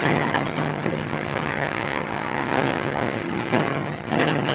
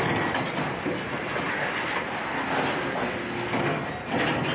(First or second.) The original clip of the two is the second